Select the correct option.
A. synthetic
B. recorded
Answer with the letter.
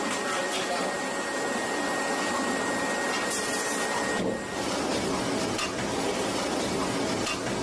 B